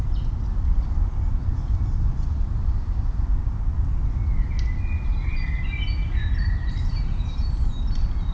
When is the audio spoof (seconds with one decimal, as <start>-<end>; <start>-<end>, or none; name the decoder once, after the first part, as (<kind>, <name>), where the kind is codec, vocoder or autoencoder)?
6.0-7.7 (vocoder, BigVGAN v2)